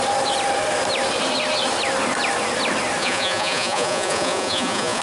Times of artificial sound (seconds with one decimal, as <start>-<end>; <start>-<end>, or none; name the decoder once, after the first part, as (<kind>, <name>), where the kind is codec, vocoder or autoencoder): 3.0-5.0 (vocoder, Vocos)